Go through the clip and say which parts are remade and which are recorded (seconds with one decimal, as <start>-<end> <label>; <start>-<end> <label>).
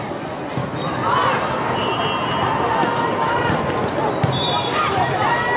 0.0-5.6 recorded